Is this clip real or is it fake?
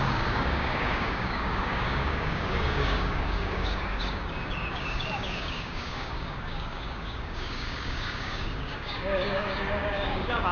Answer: fake